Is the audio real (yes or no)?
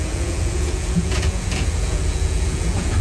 no